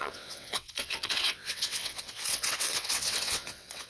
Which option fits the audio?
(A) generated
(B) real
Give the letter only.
A